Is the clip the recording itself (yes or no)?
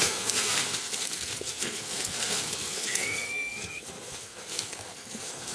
no